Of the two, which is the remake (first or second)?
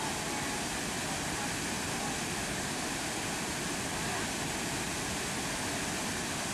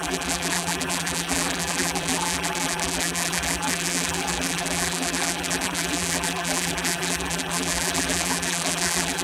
second